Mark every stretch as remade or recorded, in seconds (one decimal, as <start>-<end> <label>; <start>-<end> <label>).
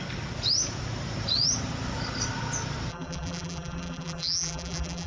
0.0-2.9 recorded; 2.9-5.1 remade